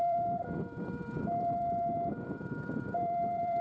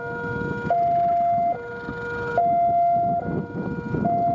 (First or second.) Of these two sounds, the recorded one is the second